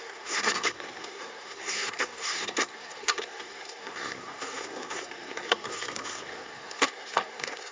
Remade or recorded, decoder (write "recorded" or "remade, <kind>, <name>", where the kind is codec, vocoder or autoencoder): remade, codec, SNAC